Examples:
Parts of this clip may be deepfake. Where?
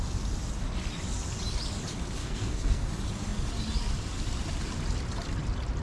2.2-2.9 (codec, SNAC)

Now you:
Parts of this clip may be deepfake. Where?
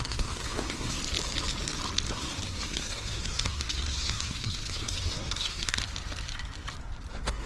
0.0-1.0 (codec, SNAC); 2.1-5.8; 7.1-7.5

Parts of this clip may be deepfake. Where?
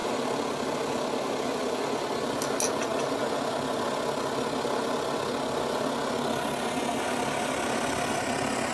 none